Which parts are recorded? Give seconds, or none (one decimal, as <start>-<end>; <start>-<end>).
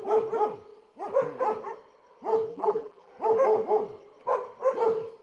0.0-2.5; 3.1-5.2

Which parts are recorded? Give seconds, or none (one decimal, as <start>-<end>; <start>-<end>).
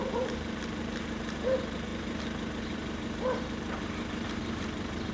none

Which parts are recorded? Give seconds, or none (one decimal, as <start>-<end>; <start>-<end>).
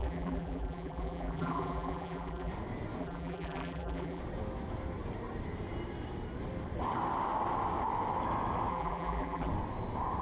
2.5-3.0; 4.2-8.7; 9.5-10.2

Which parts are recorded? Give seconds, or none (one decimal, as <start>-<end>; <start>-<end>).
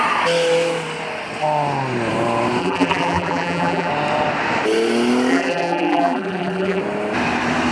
0.0-2.6; 3.9-5.3; 6.8-7.7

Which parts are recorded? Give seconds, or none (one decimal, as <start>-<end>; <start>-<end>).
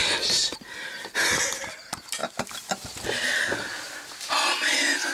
0.0-5.1